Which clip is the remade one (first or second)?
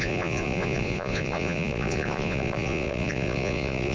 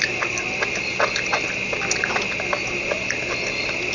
first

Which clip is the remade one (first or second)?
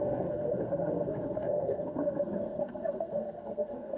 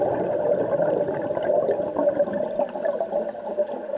first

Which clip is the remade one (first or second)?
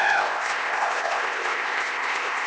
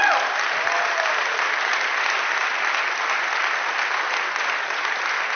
first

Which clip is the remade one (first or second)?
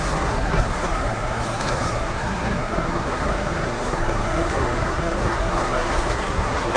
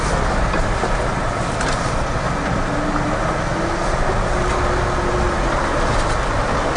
first